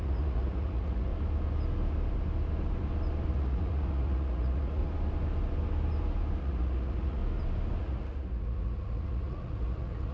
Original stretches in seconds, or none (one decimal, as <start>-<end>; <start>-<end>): 1.1-3.3; 4.8-6.4; 7.2-7.8

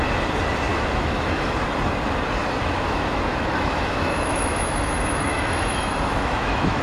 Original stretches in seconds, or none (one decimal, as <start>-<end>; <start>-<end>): 0.0-0.7; 1.5-2.4